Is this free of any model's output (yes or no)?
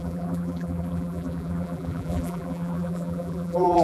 no